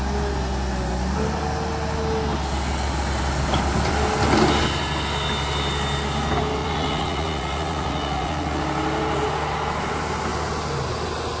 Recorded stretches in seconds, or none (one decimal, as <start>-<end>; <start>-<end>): 0.0-6.6; 8.6-11.4